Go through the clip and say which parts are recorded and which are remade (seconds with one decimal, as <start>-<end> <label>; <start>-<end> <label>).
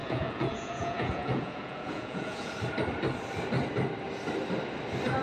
0.0-2.5 remade; 2.5-5.2 recorded